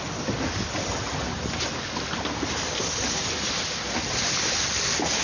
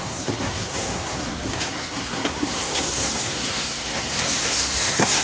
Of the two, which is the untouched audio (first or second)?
first